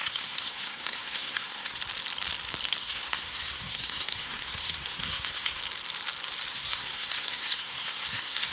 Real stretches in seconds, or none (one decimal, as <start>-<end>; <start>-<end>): 1.8-2.8; 5.6-6.5